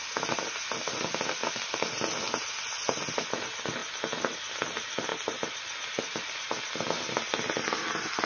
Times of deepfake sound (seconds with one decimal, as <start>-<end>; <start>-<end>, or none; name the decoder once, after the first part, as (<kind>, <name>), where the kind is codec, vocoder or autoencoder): none